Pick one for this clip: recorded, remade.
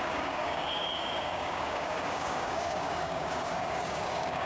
remade